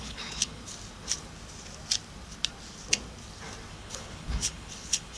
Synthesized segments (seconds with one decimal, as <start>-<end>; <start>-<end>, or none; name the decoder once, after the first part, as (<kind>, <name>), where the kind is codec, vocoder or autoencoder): 0.0-0.6 (codec, HILCodec); 3.7-5.2